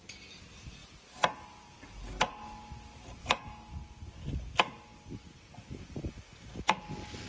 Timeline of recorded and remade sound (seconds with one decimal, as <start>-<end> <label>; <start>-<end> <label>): 0.0-3.2 recorded; 3.2-3.7 remade; 3.7-7.3 recorded